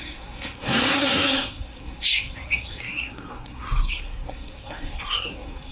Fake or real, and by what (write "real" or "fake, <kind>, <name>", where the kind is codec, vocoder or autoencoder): fake, codec, SNAC